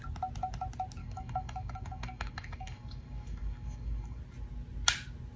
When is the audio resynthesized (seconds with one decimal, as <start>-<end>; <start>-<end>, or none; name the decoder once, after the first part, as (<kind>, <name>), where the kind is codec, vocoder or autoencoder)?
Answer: 1.0-4.2 (codec, DAC)